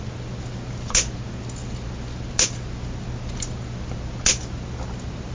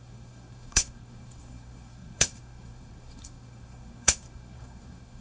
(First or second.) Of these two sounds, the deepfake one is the second